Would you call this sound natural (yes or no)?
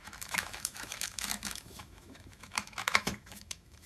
no